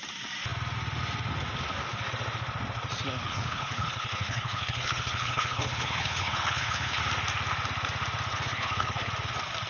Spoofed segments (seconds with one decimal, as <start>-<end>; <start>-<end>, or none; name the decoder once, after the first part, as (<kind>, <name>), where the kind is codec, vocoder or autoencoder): 3.3-7.0 (codec, HILCodec); 8.3-9.1